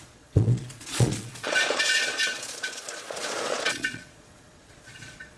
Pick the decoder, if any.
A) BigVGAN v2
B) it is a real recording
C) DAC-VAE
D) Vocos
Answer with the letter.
D